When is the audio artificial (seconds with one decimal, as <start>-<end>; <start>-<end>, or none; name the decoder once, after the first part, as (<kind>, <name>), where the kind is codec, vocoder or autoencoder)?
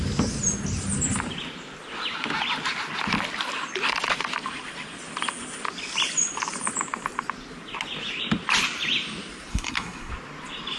9.5-10.1 (codec, SNAC)